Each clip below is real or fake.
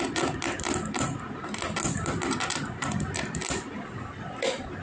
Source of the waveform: real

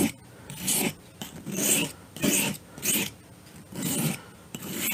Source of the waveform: fake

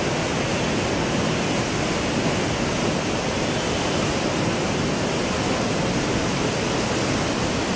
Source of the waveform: real